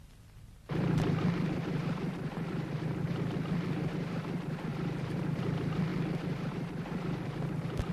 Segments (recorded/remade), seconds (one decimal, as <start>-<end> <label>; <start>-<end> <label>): 0.0-7.9 remade